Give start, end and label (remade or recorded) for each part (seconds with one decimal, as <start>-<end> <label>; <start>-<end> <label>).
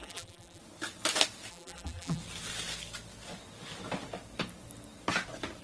0.0-0.6 remade; 0.6-1.5 recorded; 1.5-2.2 remade; 2.2-5.6 recorded